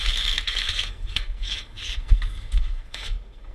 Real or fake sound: fake